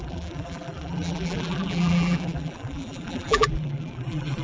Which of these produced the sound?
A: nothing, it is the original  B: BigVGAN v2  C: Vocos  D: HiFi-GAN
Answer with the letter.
B